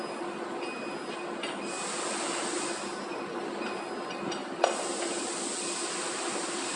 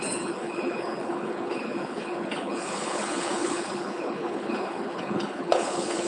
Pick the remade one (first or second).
second